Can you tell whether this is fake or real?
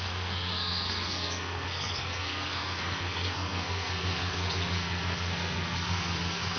fake